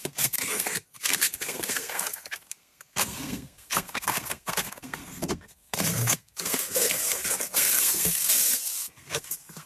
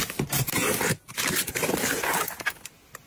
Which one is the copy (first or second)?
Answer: first